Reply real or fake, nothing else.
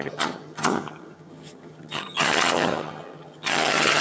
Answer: fake